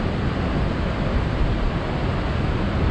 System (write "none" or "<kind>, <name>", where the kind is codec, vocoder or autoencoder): none